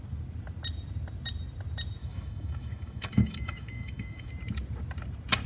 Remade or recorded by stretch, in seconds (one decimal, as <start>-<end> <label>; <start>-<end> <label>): 0.0-2.0 recorded; 2.0-4.3 remade; 4.3-5.5 recorded